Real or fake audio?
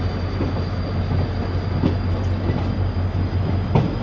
real